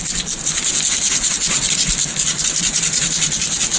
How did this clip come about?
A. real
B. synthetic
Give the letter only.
A